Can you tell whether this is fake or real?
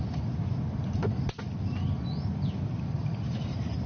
fake